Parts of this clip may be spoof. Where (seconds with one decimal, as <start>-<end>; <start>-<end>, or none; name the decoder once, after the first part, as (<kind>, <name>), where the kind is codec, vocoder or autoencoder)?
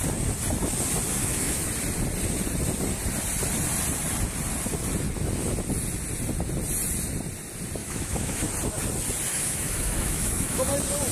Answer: 1.2-1.7 (autoencoder, DAC-VAE); 7.8-8.5; 9.3-10.7